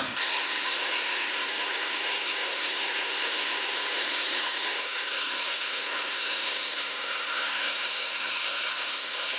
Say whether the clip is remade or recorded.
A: remade